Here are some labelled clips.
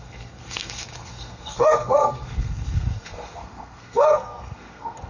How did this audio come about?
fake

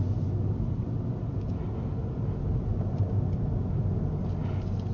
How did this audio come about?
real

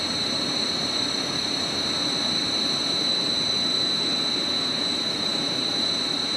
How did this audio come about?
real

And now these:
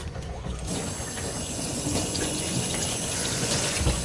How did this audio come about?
fake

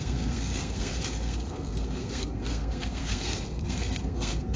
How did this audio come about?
fake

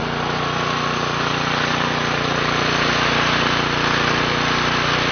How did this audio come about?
real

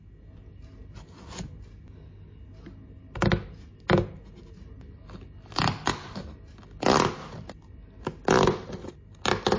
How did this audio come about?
real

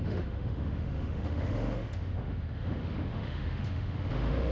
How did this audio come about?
fake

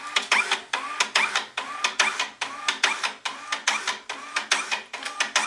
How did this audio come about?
real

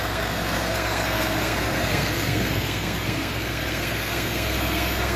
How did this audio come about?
fake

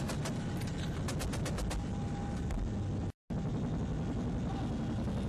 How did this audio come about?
real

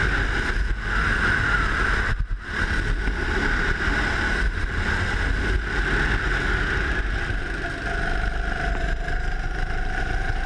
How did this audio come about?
real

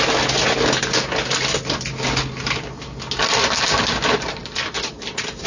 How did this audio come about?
real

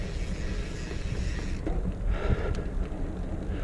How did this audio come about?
real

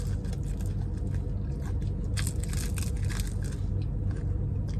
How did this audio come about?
real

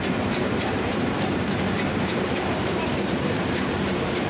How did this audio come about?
fake